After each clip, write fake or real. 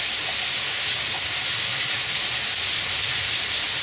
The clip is real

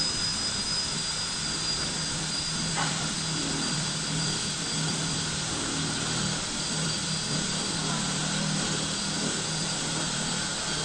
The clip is fake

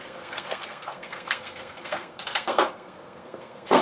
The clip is fake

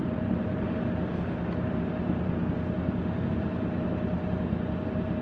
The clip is real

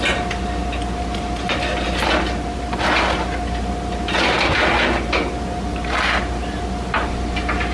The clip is real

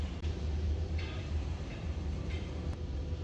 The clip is fake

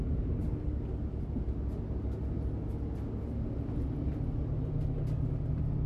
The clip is real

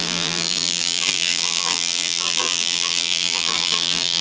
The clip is fake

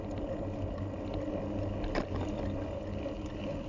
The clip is real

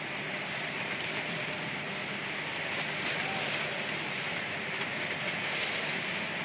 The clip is real